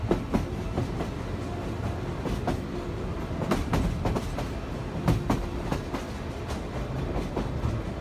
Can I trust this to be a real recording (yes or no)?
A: yes